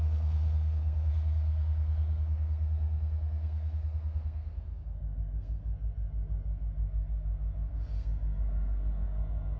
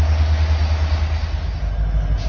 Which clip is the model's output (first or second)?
first